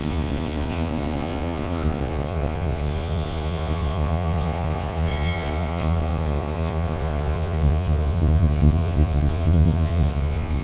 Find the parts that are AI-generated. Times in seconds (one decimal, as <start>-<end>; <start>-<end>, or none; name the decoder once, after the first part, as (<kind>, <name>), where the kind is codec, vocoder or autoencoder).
0.0-10.6 (vocoder, Vocos)